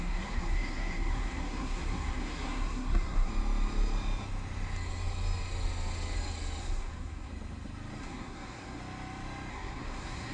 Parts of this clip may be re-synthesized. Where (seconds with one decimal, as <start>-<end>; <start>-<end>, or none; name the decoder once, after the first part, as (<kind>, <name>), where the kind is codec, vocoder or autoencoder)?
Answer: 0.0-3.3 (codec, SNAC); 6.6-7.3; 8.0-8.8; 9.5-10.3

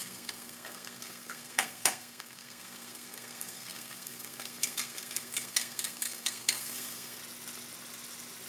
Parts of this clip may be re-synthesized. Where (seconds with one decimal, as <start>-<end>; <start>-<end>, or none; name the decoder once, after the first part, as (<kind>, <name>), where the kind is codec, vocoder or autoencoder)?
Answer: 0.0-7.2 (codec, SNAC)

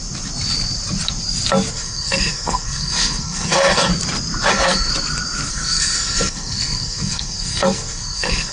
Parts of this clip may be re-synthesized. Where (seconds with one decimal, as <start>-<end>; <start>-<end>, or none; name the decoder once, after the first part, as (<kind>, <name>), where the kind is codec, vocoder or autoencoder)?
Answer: 1.7-3.9 (codec, SNAC); 4.5-4.9; 5.5-8.5